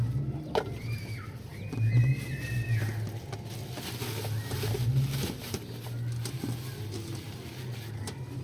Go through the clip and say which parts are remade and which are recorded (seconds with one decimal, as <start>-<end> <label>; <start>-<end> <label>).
0.0-8.4 recorded